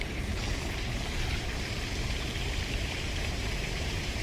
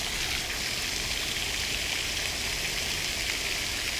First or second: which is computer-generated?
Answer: first